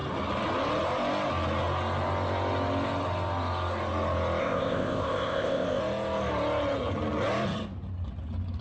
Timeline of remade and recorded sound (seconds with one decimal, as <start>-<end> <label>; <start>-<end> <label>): 0.0-4.4 recorded; 4.4-5.8 remade; 5.8-8.6 recorded

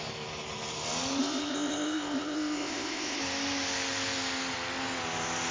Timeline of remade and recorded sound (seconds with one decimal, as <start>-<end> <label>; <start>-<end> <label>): 0.0-1.2 recorded; 1.2-3.2 remade; 3.2-5.5 recorded